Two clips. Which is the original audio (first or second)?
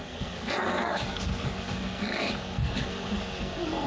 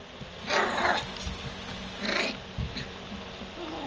second